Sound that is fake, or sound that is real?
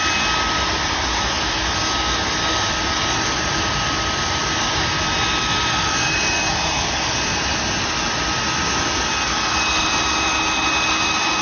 real